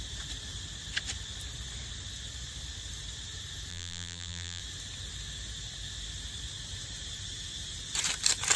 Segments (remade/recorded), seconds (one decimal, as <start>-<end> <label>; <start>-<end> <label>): 0.0-3.7 recorded; 3.7-4.6 remade; 4.6-8.6 recorded